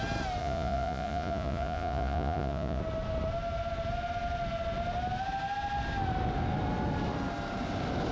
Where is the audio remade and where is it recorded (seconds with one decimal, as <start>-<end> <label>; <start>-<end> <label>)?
0.0-0.4 recorded; 0.4-2.8 remade; 2.8-8.1 recorded